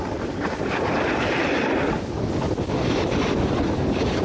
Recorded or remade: recorded